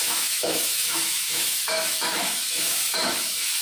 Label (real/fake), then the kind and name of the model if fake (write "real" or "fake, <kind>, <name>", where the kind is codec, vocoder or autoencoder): fake, autoencoder, DAC-VAE